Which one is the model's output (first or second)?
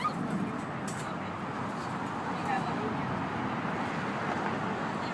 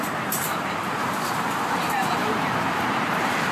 second